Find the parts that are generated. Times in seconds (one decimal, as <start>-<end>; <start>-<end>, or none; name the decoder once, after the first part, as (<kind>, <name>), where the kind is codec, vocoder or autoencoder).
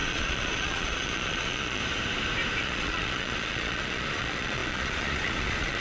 0.0-1.8 (vocoder, Vocos); 2.6-5.8